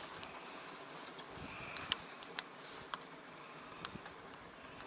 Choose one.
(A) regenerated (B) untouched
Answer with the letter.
B